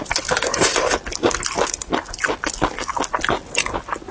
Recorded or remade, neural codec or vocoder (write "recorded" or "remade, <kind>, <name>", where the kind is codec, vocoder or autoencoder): recorded